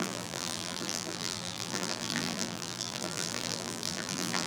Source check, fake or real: fake